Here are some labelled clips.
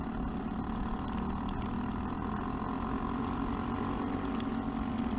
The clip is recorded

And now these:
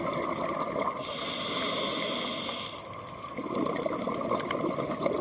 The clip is recorded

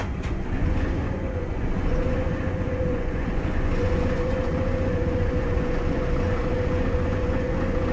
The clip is remade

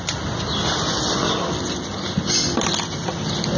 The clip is recorded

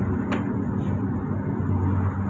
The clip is recorded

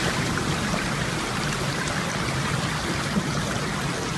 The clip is recorded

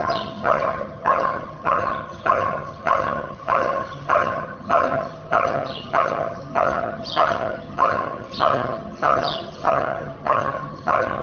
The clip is remade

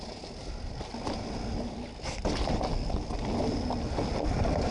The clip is recorded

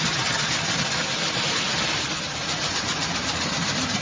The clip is recorded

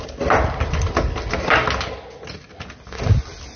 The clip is recorded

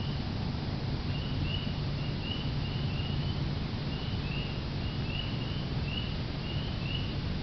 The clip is recorded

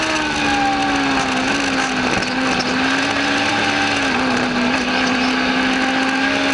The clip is recorded